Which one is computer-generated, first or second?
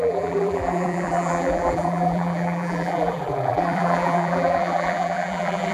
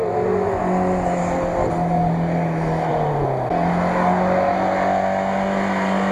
first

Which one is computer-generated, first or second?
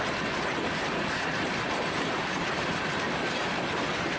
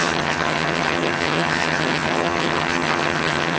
second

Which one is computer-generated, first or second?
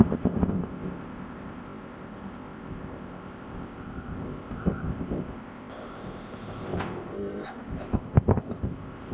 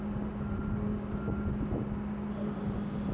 first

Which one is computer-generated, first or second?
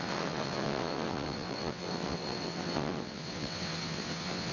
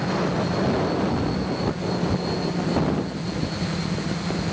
first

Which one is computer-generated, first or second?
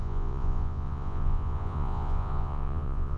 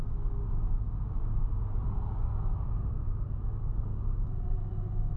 first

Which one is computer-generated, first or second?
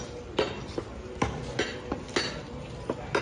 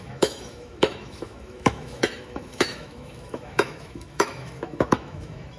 second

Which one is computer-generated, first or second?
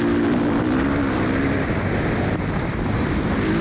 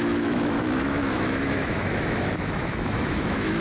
second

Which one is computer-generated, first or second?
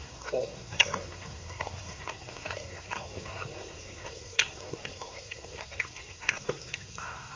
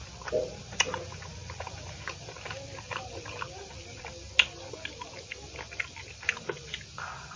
first